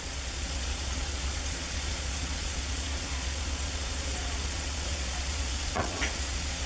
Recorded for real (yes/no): no